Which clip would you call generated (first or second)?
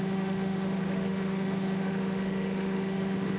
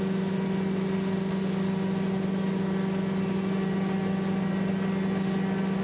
first